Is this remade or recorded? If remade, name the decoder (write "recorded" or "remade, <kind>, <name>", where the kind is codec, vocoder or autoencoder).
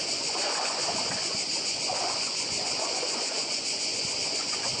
remade, vocoder, Vocos